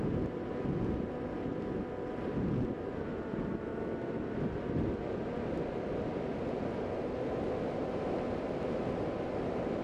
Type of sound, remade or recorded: recorded